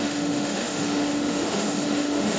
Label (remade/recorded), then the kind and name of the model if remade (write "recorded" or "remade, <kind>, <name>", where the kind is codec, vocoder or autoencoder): remade, autoencoder, DAC-VAE